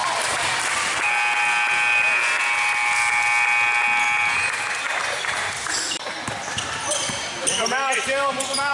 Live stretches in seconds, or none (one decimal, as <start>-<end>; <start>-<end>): 0.5-5.0